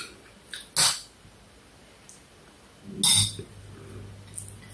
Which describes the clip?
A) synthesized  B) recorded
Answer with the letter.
B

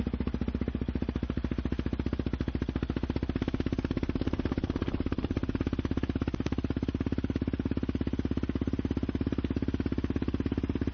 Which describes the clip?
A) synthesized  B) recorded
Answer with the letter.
B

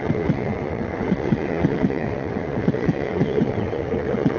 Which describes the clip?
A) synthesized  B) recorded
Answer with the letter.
A